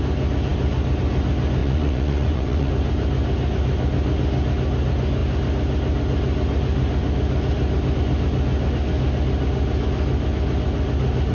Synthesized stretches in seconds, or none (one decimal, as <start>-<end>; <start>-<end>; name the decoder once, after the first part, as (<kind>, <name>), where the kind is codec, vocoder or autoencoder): 1.6-2.7 (vocoder, Vocos)